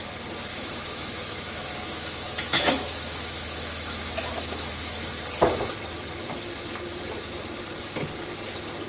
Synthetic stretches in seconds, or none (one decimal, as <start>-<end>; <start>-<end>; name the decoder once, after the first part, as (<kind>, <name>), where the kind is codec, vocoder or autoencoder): 0.5-5.1 (autoencoder, DAC-VAE)